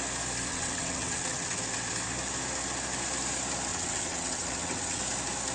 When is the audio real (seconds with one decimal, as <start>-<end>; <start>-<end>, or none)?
0.0-0.5; 1.6-3.7; 5.0-5.5